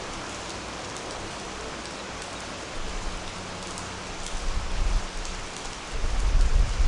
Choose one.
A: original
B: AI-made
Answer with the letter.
A